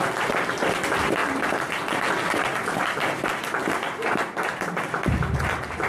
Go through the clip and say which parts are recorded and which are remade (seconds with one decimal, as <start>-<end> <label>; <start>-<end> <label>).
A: 0.0-5.9 recorded